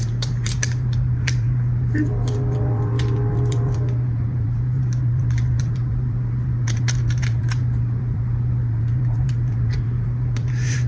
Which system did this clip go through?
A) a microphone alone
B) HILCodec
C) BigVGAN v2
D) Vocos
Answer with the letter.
C